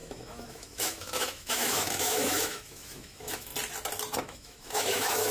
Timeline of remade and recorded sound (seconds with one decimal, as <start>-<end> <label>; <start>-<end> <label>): 0.0-3.5 remade; 3.5-4.2 recorded; 4.2-5.3 remade